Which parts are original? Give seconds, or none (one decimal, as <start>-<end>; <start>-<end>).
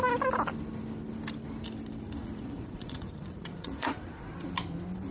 0.0-2.2; 4.1-5.1